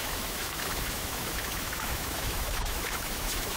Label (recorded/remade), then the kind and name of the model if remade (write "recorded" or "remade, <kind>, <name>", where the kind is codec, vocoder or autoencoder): remade, autoencoder, DAC-VAE